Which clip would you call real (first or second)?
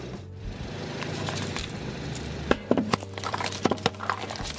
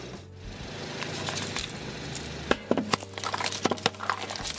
second